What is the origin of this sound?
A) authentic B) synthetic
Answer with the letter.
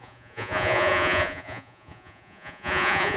B